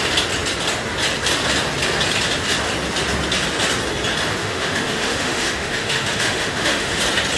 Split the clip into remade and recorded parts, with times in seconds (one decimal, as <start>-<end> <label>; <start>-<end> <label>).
0.0-4.4 recorded; 4.4-7.0 remade; 7.0-7.4 recorded